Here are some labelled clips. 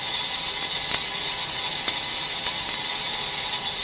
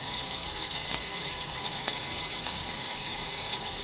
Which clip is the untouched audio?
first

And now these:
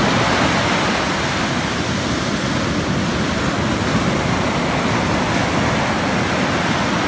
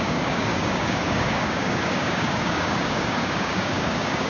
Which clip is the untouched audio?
first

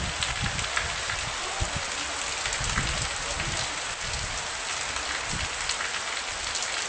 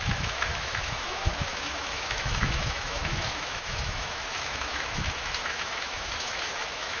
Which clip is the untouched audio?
first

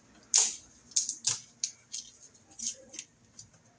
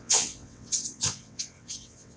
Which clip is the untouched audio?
first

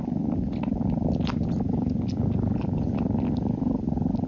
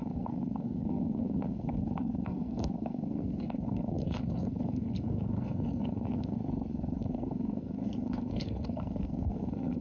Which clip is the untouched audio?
first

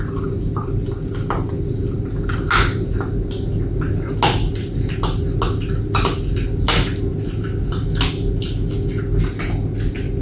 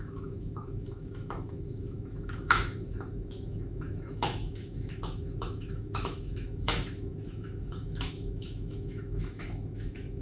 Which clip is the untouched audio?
first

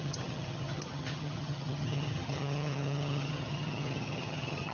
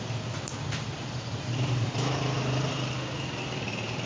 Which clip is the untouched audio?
second